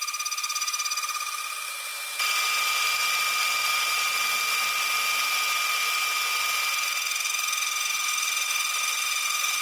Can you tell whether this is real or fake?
real